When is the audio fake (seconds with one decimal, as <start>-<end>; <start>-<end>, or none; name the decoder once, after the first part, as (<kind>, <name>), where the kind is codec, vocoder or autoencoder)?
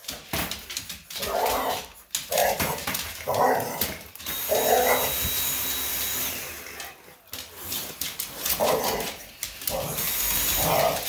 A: 2.4-4.2 (vocoder, BigVGAN v2)